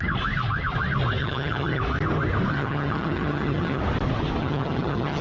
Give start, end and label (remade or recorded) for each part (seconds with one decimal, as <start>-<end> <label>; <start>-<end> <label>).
0.0-1.2 recorded; 1.2-1.8 remade; 1.8-2.5 recorded; 2.5-3.8 remade; 3.8-4.4 recorded; 4.4-5.2 remade